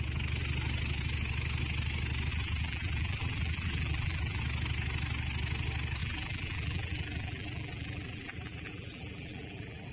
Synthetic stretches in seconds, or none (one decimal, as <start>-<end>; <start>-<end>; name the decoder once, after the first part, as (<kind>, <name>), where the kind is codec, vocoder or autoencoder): 2.3-4.4 (vocoder, BigVGAN v2); 6.0-9.9